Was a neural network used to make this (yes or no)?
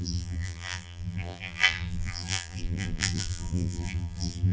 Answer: yes